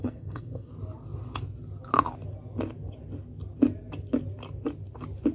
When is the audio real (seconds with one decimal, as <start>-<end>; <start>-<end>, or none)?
0.7-5.3